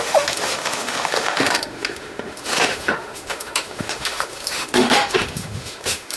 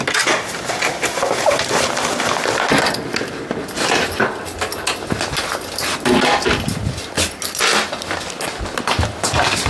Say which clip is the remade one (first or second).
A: first